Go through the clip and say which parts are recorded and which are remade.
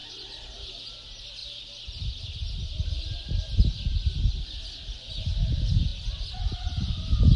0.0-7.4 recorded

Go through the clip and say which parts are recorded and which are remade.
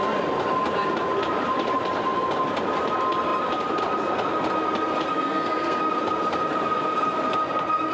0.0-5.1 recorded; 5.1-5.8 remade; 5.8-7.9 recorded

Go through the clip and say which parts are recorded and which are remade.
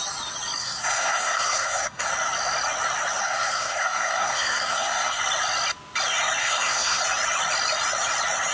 0.0-0.6 recorded; 0.6-2.1 remade; 2.1-3.2 recorded; 3.2-5.2 remade; 5.2-6.4 recorded; 6.4-7.0 remade; 7.0-8.5 recorded